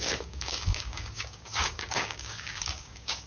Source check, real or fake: fake